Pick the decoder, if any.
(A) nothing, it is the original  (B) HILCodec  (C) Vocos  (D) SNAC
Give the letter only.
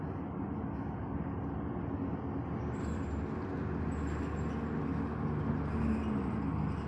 A